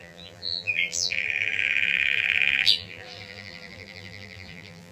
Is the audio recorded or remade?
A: remade